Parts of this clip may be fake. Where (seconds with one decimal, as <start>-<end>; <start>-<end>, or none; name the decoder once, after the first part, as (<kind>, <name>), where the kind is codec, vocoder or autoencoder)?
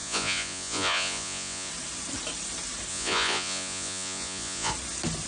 0.0-1.7 (vocoder, Vocos); 2.9-4.7